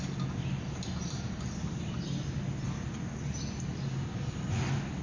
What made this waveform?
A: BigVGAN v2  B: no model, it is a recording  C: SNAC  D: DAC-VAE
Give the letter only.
B